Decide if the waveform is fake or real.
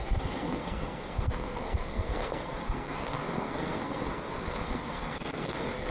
fake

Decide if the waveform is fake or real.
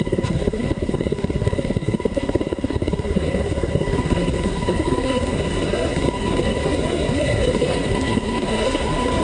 fake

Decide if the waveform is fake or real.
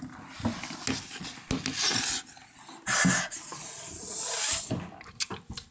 real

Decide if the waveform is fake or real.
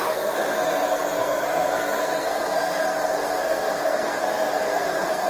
fake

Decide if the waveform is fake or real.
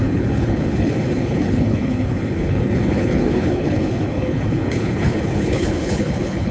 fake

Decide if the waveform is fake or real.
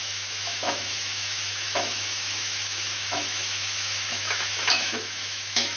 fake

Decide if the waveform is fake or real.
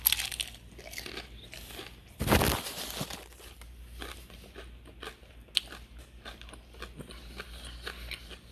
real